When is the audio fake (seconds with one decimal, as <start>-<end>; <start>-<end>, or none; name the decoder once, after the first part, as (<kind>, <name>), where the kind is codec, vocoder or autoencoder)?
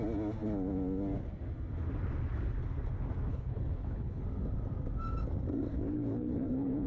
3.3-4.2 (codec, HILCodec); 5.7-6.9